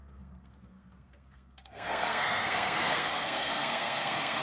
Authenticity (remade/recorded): remade